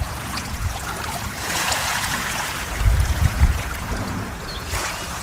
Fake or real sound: fake